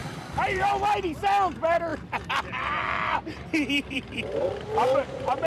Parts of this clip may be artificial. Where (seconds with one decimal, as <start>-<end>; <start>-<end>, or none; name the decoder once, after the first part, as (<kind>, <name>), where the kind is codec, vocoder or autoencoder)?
0.0-0.7 (vocoder, BigVGAN v2); 1.9-5.5